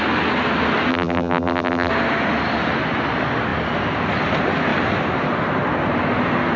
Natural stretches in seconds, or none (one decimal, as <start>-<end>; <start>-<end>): 0.0-0.9; 1.9-6.6